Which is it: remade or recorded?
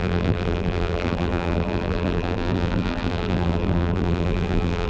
remade